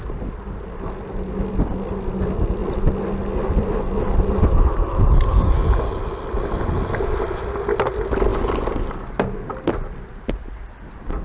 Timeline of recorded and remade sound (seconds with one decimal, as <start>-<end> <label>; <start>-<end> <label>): 0.0-11.2 recorded

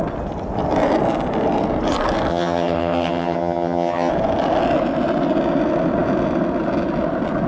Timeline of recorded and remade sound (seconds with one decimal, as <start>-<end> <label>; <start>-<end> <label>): 0.0-2.3 recorded; 2.3-4.1 remade; 4.1-7.5 recorded

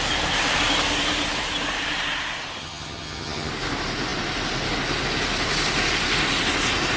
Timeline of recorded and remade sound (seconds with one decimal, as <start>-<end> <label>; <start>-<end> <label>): 0.0-2.6 recorded; 2.6-3.5 remade; 3.5-7.0 recorded

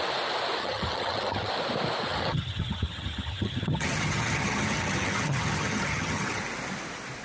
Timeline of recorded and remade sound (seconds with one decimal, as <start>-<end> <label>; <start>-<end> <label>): 0.0-0.6 recorded; 0.6-1.5 remade; 1.5-2.1 recorded; 2.1-6.4 remade; 6.4-7.2 recorded